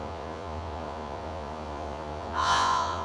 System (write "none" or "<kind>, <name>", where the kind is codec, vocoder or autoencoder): vocoder, Vocos